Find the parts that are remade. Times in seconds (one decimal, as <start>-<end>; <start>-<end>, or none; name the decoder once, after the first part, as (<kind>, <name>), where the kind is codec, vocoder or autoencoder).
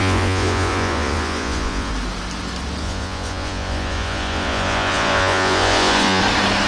0.0-1.9 (vocoder, Vocos); 2.8-6.2